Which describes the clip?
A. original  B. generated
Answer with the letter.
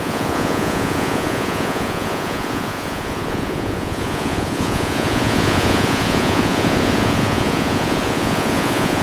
B